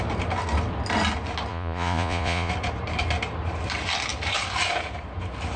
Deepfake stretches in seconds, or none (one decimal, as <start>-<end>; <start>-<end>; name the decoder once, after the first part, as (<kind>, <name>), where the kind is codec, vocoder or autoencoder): 1.5-2.5 (vocoder, Vocos)